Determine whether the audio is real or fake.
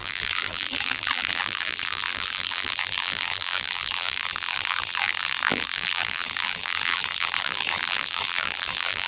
fake